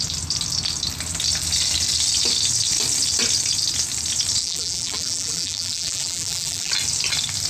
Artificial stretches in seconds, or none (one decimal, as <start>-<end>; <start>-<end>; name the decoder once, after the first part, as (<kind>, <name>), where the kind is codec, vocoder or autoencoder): 4.4-6.7 (vocoder, BigVGAN v2)